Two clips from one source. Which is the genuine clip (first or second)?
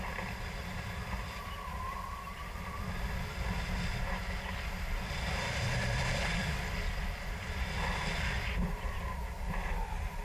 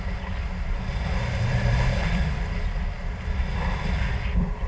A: second